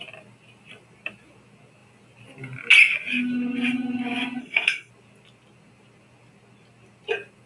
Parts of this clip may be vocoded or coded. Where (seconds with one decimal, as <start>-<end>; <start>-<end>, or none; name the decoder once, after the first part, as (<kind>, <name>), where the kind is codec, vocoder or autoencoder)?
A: 4.4-4.9 (codec, SNAC)